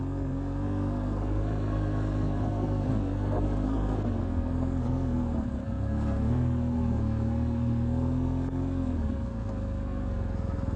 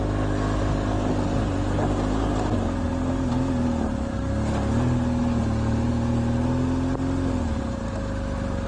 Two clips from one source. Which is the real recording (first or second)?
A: second